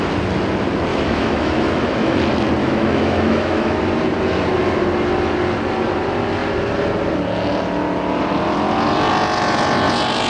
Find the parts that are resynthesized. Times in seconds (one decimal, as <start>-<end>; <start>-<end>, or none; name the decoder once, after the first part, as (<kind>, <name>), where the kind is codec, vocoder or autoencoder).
0.9-2.2 (autoencoder, DAC-VAE); 2.6-3.8